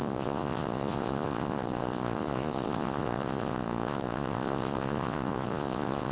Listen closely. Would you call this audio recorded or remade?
remade